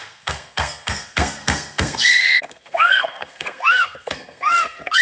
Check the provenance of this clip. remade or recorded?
remade